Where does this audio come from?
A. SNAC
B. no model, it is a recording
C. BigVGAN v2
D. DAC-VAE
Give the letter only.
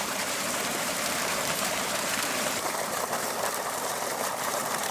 C